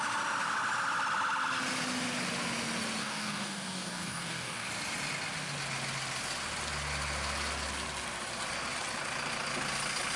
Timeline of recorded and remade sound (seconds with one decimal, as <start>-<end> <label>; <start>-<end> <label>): 0.0-3.0 recorded; 3.0-4.7 remade; 4.7-10.2 recorded